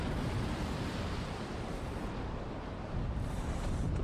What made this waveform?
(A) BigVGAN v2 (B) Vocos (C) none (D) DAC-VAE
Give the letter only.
A